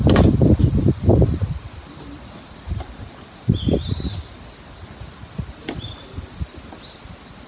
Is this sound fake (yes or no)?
no